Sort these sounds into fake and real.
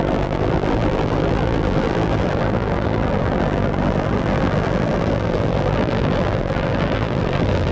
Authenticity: fake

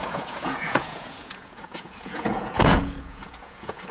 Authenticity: fake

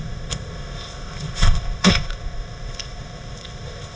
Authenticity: fake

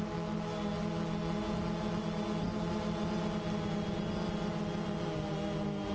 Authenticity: real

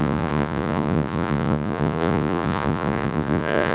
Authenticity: fake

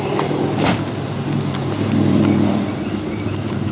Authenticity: fake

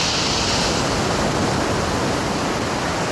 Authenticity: real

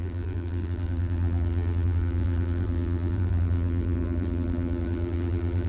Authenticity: fake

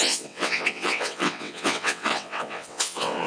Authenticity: fake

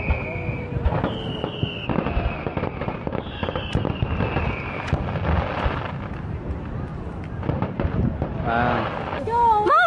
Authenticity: real